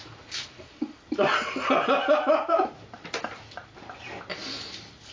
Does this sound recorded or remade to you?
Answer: recorded